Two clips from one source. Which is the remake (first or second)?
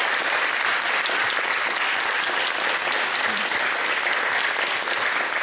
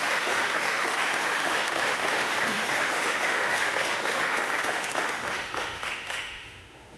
second